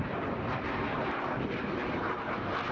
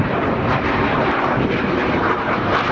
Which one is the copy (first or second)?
second